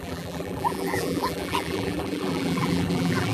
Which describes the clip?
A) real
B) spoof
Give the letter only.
B